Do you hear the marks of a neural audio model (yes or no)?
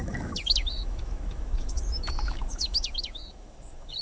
yes